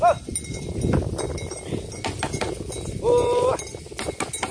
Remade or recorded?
recorded